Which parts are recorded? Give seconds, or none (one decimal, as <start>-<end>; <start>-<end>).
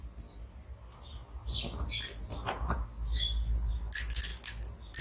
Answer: 0.0-5.0